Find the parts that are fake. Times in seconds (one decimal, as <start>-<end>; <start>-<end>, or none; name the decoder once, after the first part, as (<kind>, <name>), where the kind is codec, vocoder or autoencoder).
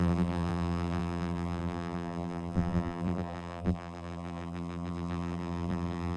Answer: 0.0-6.2 (vocoder, BigVGAN v2)